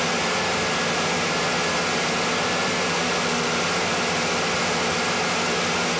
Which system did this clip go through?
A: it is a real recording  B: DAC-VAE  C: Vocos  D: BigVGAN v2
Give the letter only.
A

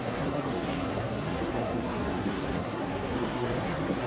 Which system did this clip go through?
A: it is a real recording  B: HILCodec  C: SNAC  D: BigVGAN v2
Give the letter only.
C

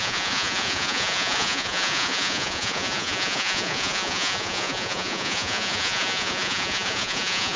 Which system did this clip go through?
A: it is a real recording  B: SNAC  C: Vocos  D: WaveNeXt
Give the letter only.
C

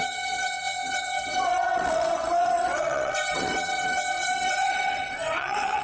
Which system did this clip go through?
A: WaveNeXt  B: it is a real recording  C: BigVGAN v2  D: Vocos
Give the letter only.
A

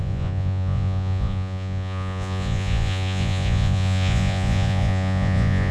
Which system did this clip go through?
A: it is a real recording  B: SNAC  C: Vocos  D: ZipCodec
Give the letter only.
C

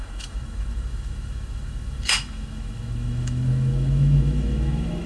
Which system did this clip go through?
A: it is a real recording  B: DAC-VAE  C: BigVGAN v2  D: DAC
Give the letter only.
B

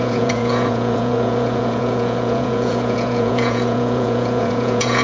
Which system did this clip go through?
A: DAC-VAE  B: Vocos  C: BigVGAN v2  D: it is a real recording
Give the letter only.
B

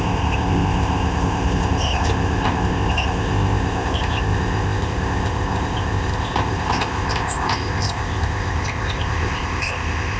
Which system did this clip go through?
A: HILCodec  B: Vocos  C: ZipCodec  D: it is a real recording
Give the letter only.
C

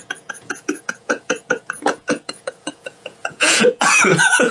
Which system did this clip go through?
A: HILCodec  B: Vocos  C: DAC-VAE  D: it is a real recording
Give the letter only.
B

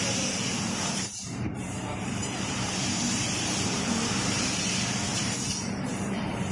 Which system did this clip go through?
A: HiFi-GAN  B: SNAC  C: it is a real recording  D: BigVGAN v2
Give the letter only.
D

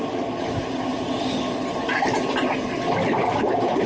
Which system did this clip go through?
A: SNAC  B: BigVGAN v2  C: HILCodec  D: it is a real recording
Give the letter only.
D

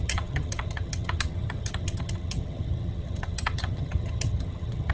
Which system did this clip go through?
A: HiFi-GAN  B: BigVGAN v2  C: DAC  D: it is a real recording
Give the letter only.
A